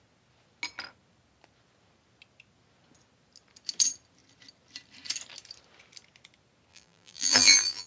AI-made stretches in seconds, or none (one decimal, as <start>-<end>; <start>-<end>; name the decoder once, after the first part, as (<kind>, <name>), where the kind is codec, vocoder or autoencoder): 6.7-7.9 (vocoder, BigVGAN v2)